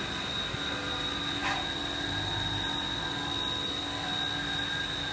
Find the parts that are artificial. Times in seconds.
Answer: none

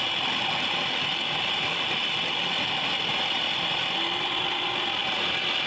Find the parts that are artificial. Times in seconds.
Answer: none